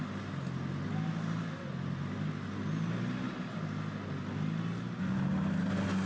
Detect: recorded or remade recorded